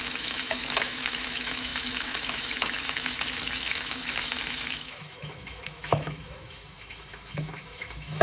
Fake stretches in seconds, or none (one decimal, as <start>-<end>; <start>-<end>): 0.0-8.2